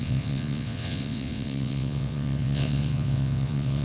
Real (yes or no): no